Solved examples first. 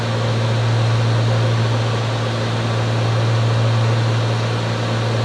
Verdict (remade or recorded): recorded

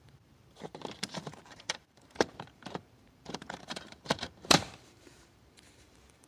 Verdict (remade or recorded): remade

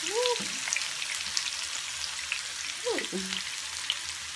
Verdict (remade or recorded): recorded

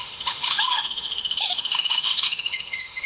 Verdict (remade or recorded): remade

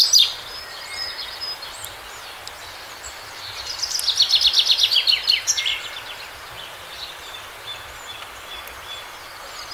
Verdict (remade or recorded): recorded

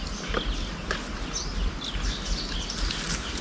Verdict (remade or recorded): recorded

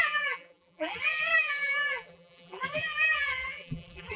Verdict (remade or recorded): remade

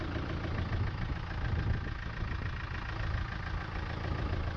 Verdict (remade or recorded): recorded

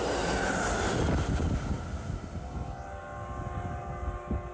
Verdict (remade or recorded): recorded